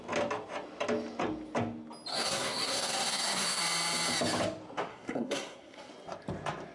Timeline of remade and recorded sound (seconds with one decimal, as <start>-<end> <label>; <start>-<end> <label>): 0.0-2.1 recorded; 2.1-3.6 remade; 3.6-4.9 recorded; 4.9-5.9 remade; 5.9-6.7 recorded